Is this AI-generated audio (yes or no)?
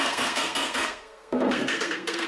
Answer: yes